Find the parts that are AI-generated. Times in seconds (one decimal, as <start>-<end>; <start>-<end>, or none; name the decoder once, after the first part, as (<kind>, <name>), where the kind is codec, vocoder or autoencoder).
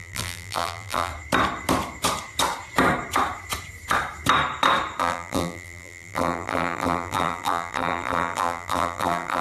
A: 0.0-1.1 (vocoder, BigVGAN v2); 5.0-9.4